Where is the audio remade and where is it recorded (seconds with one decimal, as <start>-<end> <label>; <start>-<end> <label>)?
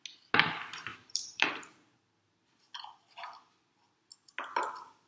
0.0-0.9 recorded; 0.9-2.1 remade; 2.1-5.1 recorded